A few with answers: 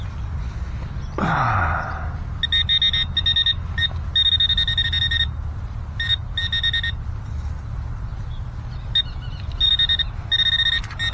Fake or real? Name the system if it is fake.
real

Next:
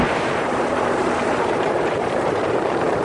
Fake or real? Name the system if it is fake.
fake, vocoder, BigVGAN v2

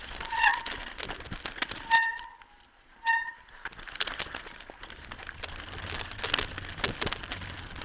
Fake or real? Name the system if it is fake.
real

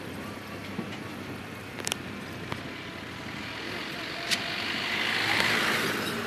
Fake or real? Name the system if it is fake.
fake, vocoder, BigVGAN v2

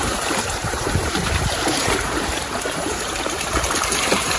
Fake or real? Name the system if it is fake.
fake, vocoder, BigVGAN v2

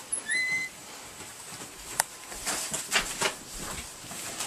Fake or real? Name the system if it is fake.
real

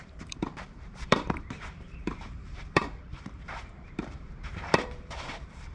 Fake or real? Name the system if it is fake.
fake, vocoder, BigVGAN v2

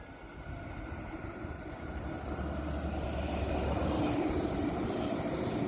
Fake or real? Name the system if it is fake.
real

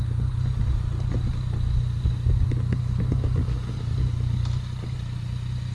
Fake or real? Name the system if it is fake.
real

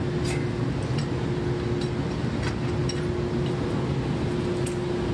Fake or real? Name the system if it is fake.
real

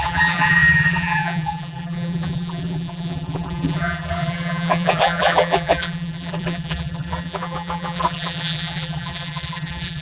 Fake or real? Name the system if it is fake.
fake, vocoder, BigVGAN v2